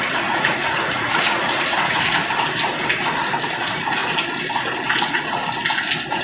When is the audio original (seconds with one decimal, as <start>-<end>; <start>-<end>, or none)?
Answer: 2.2-3.6; 4.0-5.0; 5.4-6.2